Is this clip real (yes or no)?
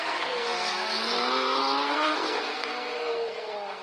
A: no